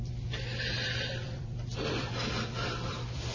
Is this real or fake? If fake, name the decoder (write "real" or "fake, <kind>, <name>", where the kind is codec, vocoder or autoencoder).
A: fake, vocoder, BigVGAN v2